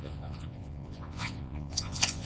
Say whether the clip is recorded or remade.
remade